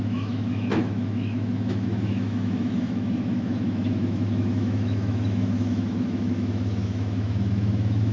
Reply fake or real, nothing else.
fake